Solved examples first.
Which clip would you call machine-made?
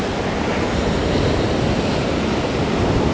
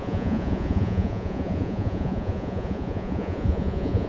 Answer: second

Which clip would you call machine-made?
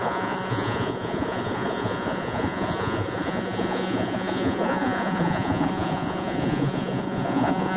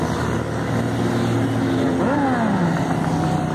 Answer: first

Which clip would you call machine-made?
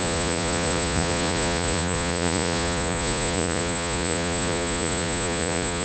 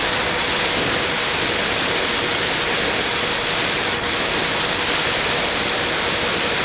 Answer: first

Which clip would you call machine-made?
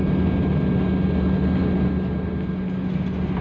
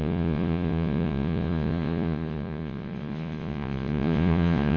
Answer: second